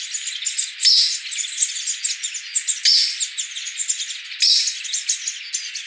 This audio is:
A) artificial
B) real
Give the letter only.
B